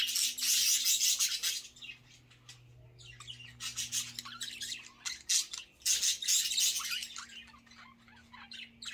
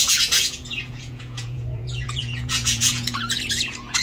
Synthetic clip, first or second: second